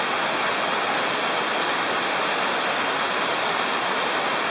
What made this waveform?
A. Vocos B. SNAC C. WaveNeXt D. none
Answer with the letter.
D